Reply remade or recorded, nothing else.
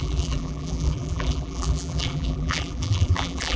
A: remade